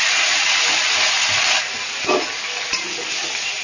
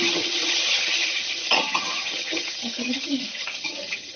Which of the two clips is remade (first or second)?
second